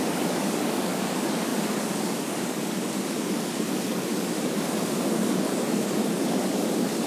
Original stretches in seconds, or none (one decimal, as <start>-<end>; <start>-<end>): none